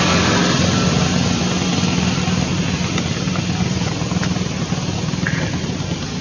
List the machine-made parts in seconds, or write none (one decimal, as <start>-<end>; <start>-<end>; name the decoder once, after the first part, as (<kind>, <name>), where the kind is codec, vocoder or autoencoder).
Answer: none